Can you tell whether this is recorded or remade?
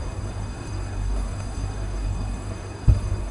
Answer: remade